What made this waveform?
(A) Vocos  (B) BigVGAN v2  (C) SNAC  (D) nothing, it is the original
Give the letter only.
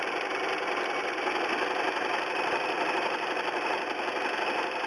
D